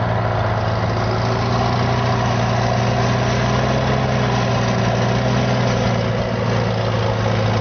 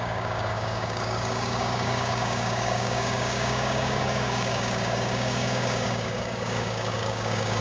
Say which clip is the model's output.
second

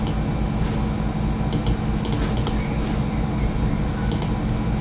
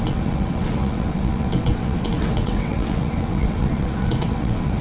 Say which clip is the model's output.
second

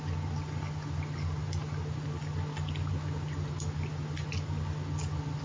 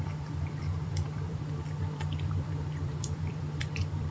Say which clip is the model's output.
second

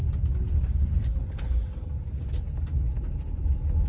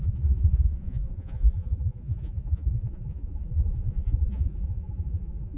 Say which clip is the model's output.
second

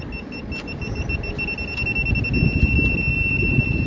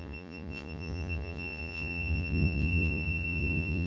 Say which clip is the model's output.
second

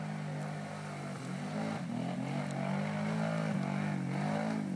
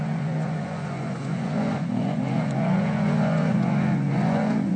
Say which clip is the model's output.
second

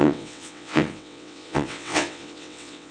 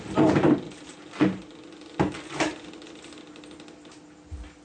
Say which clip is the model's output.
first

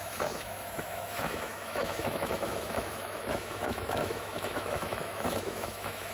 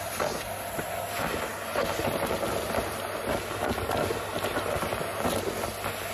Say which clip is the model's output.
first